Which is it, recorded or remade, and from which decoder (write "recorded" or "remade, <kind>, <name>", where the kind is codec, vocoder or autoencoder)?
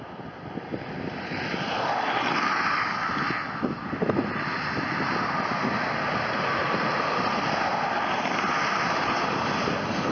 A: recorded